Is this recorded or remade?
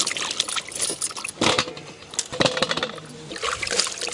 recorded